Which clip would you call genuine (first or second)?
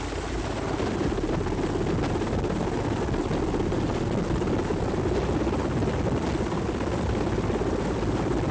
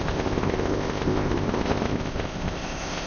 first